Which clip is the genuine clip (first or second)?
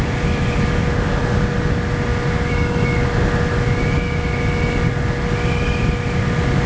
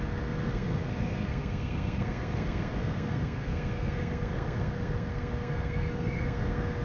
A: first